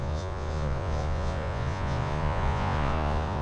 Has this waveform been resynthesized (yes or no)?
yes